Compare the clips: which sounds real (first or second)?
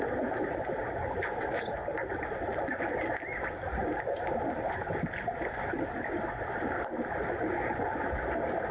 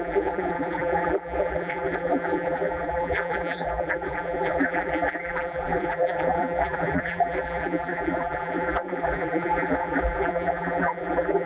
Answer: first